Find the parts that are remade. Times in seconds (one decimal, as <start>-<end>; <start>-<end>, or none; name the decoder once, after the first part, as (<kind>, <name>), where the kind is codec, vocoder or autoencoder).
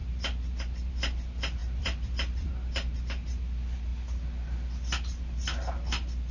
0.0-0.9 (vocoder, BigVGAN v2); 1.6-2.5